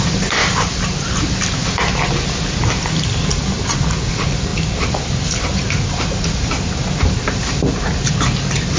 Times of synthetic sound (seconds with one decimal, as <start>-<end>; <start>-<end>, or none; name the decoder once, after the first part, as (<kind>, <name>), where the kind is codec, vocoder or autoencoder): 0.4-1.2 (vocoder, BigVGAN v2)